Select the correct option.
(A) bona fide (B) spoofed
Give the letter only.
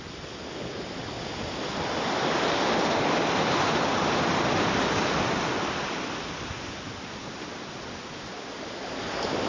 A